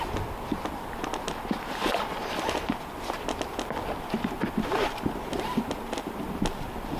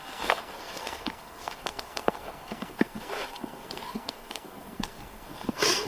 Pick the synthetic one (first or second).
second